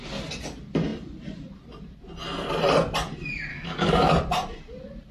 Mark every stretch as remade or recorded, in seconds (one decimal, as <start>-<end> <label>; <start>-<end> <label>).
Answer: 0.0-3.5 recorded; 3.5-4.1 remade; 4.1-5.1 recorded